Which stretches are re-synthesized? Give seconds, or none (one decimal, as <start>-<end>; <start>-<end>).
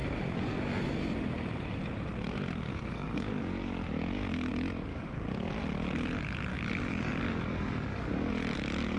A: 2.7-4.5; 4.9-5.5; 6.5-8.3